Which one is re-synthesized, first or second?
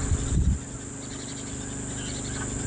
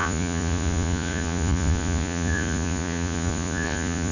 second